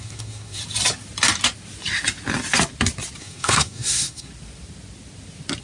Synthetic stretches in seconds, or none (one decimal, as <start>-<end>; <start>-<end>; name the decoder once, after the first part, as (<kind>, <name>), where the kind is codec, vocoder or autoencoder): 0.0-0.6 (codec, SNAC); 3.2-4.3